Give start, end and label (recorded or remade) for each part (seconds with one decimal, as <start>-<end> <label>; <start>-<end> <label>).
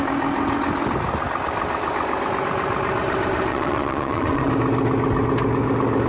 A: 0.0-3.5 recorded; 3.5-4.5 remade; 4.5-6.1 recorded